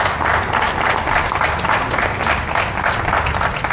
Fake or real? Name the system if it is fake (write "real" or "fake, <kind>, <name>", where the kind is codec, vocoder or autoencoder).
real